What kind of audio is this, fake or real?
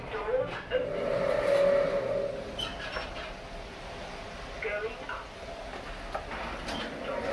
real